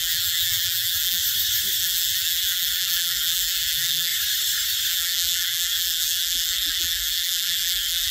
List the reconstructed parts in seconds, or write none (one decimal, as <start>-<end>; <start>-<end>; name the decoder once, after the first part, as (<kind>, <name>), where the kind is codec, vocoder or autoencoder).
0.0-1.2 (vocoder, BigVGAN v2); 1.8-4.1; 4.9-8.1